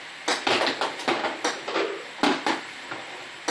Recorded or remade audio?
recorded